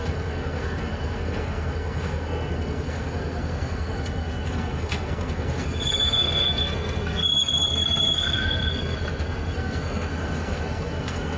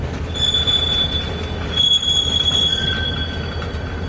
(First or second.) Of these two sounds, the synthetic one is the first